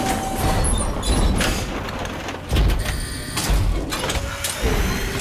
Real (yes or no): yes